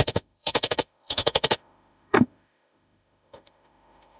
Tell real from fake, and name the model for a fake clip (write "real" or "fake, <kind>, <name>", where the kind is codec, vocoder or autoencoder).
fake, autoencoder, DAC-VAE